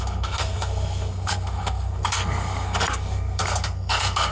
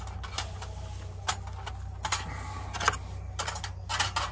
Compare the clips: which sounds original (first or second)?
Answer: second